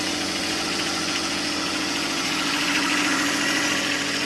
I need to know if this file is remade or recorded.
remade